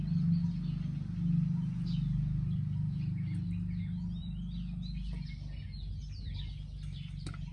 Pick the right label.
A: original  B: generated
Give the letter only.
A